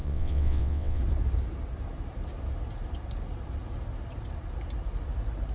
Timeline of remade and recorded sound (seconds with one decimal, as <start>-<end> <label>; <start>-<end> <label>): 0.0-1.0 remade; 1.0-5.5 recorded